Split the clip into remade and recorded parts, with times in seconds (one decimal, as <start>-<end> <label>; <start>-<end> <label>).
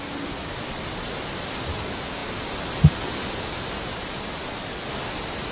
0.0-5.5 recorded